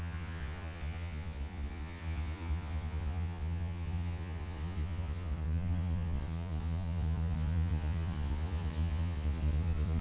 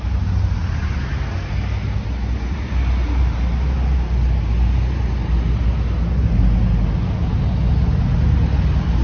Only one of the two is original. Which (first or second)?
second